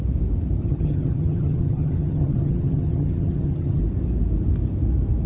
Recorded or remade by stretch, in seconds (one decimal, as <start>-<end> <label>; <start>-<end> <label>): 0.0-0.6 recorded; 0.6-3.8 remade; 3.8-5.3 recorded